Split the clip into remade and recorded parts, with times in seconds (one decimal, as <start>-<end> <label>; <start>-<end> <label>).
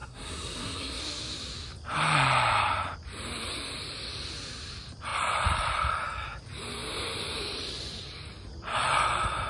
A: 0.0-1.0 remade; 1.0-9.5 recorded